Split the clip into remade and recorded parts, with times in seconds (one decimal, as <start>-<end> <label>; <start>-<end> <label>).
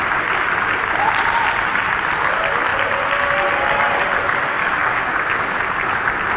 0.0-4.6 recorded; 4.6-5.6 remade; 5.6-6.4 recorded